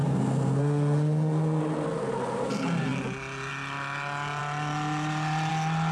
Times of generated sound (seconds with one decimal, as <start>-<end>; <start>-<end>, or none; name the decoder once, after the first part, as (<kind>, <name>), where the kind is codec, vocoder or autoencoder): 0.0-1.6 (codec, SNAC)